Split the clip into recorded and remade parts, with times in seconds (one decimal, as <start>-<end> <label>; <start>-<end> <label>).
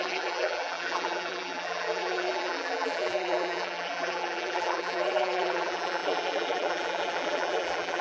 0.0-8.0 remade